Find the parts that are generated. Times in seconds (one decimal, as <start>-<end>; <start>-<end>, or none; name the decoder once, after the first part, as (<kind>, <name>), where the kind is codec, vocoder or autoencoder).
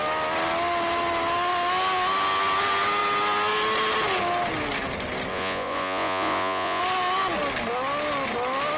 5.3-6.8 (vocoder, Vocos)